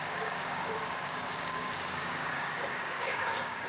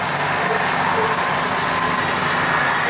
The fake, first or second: first